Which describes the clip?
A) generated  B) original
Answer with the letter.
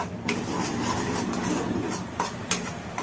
B